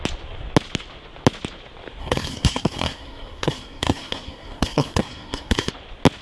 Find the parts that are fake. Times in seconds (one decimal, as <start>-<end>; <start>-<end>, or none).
2.0-5.7